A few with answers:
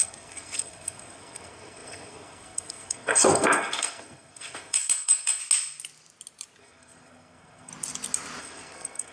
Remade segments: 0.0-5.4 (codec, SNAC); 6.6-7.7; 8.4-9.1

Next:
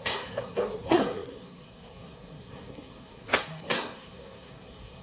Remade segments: 0.0-5.0 (codec, SNAC)

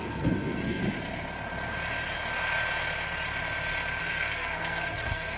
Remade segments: 0.0-0.8 (codec, SNAC); 4.0-5.4

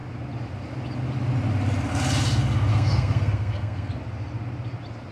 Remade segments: 2.7-3.9 (codec, SNAC)

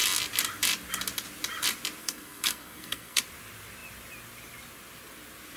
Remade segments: 2.0-3.2 (codec, SNAC)